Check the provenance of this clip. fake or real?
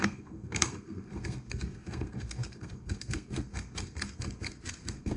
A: fake